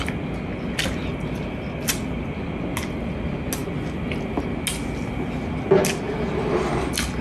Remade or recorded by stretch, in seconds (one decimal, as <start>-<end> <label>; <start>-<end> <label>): 0.0-7.2 recorded